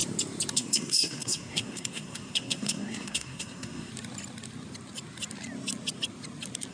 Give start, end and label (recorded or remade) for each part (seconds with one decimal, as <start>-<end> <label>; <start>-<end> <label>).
0.0-0.5 recorded; 0.5-3.9 remade; 3.9-6.7 recorded